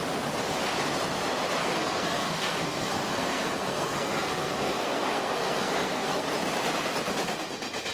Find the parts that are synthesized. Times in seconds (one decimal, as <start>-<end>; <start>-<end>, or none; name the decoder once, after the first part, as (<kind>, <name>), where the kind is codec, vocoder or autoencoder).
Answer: 1.6-6.3 (codec, SNAC)